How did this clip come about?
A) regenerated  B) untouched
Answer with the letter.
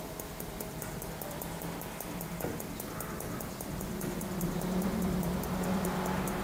A